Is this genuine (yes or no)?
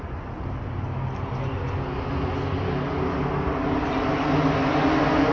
yes